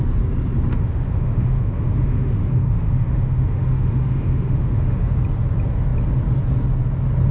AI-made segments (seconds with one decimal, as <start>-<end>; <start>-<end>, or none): 0.7-5.1